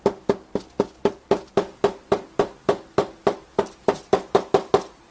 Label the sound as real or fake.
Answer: real